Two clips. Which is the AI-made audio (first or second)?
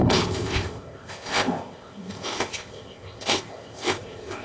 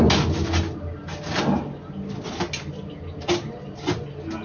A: first